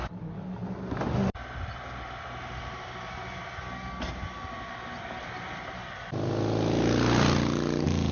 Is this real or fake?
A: real